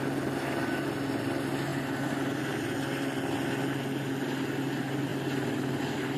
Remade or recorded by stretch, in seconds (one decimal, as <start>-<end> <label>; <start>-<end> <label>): 0.0-6.2 recorded